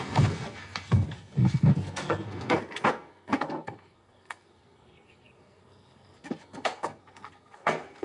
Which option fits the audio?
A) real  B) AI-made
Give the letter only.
B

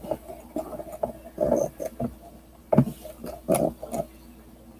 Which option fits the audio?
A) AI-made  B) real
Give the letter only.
B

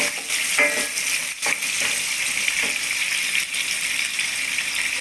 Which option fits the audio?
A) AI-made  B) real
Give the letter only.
B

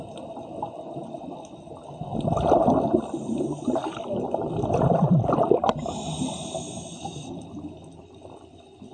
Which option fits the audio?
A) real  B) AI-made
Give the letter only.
A